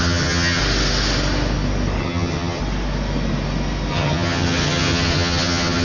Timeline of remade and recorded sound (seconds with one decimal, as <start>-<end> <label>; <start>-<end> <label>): 0.0-0.6 remade; 0.6-2.0 recorded; 2.0-2.6 remade; 2.6-3.9 recorded; 3.9-5.8 remade